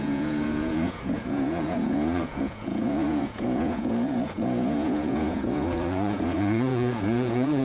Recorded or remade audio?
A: remade